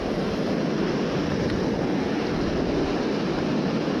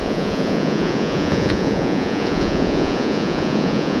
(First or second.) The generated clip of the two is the second